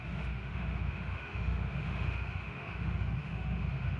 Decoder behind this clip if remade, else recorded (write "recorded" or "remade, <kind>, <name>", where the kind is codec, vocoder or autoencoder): remade, autoencoder, DAC-VAE